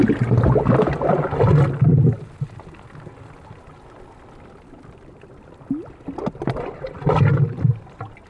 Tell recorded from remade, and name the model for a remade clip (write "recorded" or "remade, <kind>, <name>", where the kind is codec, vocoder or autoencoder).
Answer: recorded